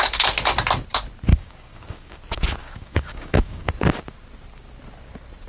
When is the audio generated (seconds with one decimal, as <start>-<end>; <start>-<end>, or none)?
1.3-2.2; 2.6-3.7